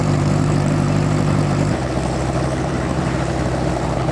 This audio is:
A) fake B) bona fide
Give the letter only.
A